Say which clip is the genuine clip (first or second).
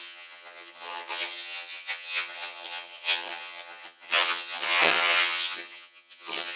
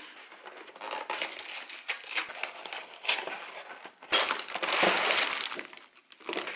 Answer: second